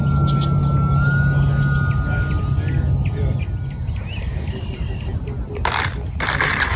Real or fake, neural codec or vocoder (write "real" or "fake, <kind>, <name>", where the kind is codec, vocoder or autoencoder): real